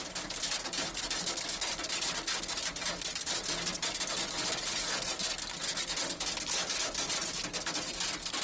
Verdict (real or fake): real